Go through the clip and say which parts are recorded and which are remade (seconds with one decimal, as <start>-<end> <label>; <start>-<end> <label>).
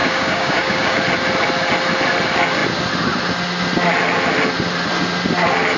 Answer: 0.0-1.0 remade; 1.0-5.8 recorded